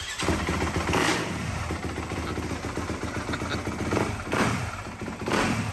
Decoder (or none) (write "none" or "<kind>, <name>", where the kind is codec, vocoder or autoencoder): vocoder, BigVGAN v2